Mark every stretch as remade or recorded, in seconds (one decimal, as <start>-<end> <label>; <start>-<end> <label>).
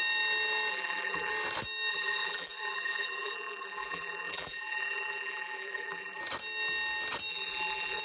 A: 0.0-0.7 recorded; 0.7-1.3 remade; 1.3-1.9 recorded; 1.9-6.2 remade; 6.2-7.3 recorded; 7.3-8.0 remade